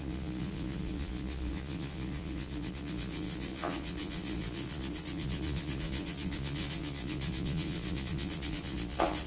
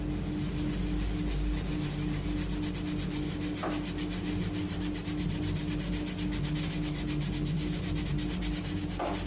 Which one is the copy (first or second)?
first